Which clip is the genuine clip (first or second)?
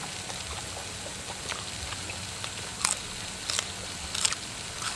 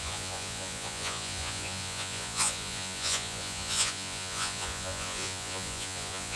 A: first